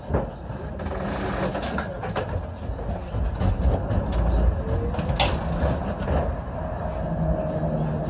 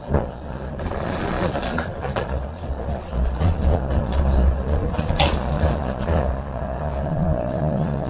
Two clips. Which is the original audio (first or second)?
first